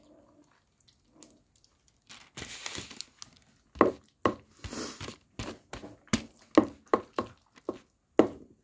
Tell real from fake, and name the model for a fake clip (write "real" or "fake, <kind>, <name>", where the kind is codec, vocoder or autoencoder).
real